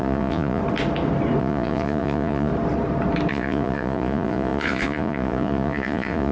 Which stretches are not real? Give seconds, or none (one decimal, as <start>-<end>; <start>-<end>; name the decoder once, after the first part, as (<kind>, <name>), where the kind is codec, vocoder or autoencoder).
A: 0.0-0.6 (vocoder, Vocos); 1.4-2.5; 3.3-6.3